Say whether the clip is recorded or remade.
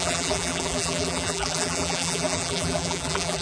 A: remade